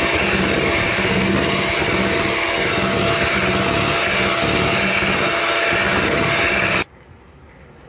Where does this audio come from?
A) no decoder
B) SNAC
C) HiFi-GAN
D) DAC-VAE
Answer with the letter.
A